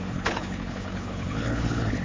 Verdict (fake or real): fake